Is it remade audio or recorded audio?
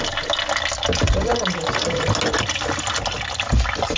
recorded